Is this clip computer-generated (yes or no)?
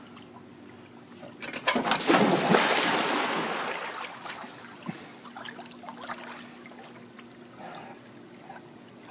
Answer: no